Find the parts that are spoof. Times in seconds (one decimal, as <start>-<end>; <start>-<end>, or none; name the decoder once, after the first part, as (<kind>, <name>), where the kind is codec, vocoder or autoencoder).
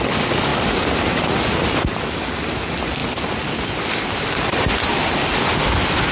none